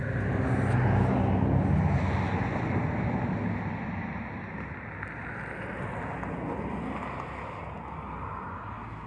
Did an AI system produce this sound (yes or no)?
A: no